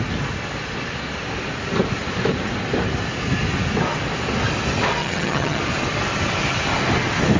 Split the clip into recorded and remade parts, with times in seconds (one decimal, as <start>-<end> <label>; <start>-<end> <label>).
0.0-5.0 recorded; 5.0-5.6 remade; 5.6-7.4 recorded